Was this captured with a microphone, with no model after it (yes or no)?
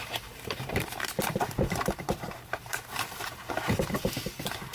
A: no